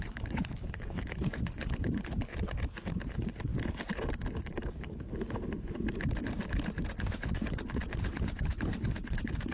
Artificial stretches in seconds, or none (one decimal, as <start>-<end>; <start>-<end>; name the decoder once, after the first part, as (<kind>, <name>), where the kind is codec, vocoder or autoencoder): 0.0-2.3 (codec, HILCodec); 2.9-3.5; 4.4-5.1; 7.0-9.5